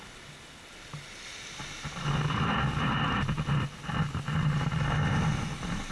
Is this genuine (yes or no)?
yes